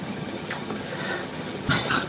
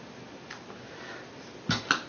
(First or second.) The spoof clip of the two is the first